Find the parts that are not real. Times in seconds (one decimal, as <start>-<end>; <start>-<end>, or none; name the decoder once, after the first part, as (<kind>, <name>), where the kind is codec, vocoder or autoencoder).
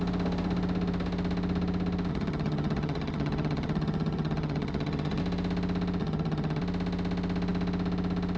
2.1-5.2 (vocoder, HiFi-GAN); 6.0-6.6